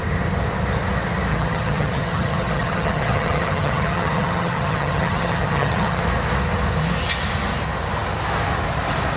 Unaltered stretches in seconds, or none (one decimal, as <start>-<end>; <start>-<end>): 0.0-1.3; 6.0-9.2